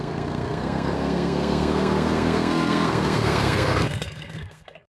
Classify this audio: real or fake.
fake